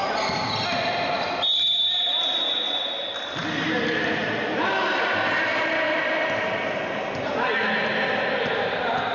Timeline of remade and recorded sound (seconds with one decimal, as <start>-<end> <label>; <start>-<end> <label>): 0.0-9.1 recorded